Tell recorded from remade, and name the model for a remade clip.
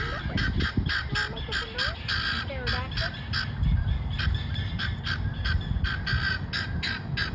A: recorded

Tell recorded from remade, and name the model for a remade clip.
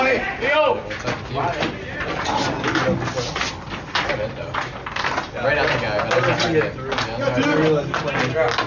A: recorded